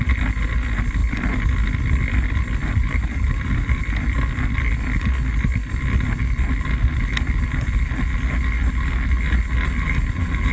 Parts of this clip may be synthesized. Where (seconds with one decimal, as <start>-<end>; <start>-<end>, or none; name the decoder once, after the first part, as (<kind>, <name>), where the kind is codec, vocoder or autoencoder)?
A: 2.8-3.8 (vocoder, BigVGAN v2)

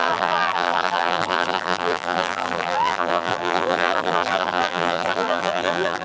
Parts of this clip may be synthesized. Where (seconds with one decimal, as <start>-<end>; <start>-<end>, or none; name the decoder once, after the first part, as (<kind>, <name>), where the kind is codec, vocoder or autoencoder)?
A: 0.0-6.0 (vocoder, BigVGAN v2)